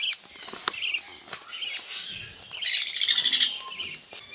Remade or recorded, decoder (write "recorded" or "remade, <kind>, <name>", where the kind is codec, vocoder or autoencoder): recorded